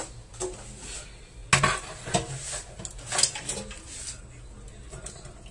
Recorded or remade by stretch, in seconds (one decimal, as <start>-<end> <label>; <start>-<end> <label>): 0.0-5.5 recorded